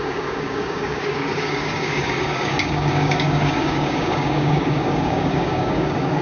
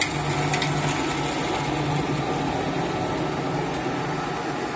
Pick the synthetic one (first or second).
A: first